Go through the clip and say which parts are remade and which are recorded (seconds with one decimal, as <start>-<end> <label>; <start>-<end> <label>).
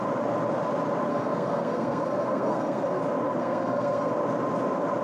0.0-1.1 recorded; 1.1-3.0 remade; 3.0-3.4 recorded; 3.4-4.1 remade; 4.1-5.0 recorded